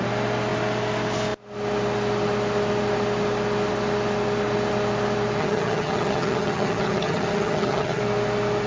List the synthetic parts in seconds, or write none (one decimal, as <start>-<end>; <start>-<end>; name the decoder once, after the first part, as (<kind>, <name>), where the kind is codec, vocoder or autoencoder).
5.4-8.0 (vocoder, HiFi-GAN)